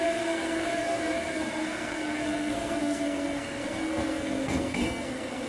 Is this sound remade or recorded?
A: remade